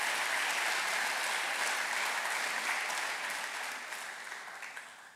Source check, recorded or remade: recorded